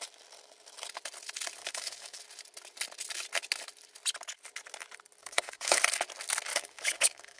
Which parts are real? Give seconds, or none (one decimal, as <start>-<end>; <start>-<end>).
0.0-1.6; 2.2-5.2; 5.8-6.5